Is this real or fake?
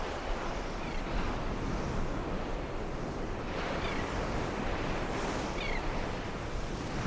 real